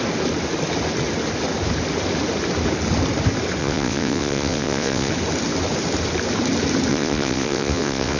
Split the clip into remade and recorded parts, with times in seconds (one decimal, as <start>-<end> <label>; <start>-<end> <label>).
0.0-3.6 recorded; 3.6-5.1 remade; 5.1-6.9 recorded; 6.9-8.2 remade